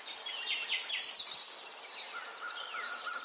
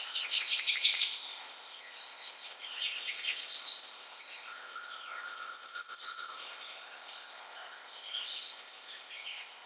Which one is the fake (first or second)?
second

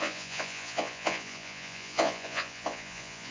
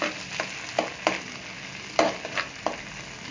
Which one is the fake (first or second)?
first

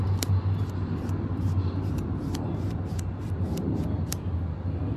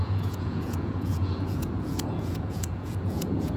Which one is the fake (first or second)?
second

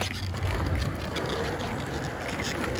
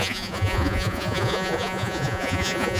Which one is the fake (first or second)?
second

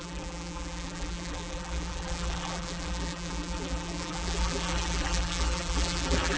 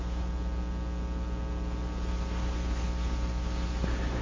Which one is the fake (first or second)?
first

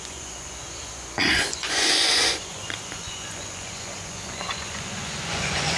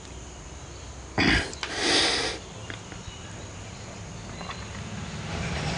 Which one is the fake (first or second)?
first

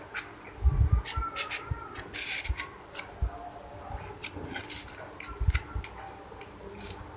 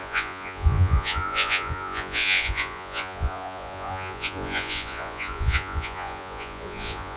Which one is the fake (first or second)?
second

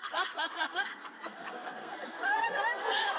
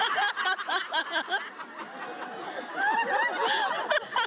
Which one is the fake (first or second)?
first